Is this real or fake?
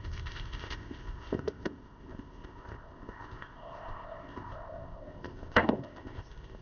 fake